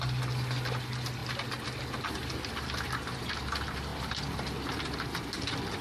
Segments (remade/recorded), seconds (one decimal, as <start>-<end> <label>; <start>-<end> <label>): 0.0-5.8 recorded